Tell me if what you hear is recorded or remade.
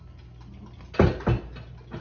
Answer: recorded